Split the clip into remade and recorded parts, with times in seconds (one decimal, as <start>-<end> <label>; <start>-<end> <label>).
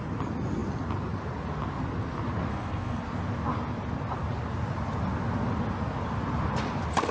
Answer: 0.0-2.5 recorded; 2.5-3.0 remade; 3.0-7.1 recorded